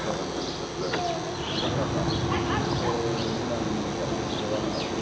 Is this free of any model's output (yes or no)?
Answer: yes